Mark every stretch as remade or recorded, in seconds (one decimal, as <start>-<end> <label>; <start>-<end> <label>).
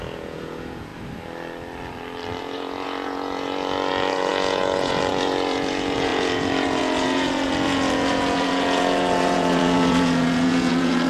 0.0-0.9 remade; 0.9-2.4 recorded; 2.4-11.1 remade